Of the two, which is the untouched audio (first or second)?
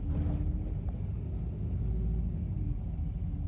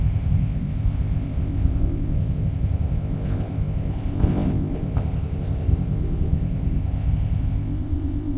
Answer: first